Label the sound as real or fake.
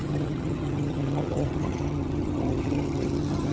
fake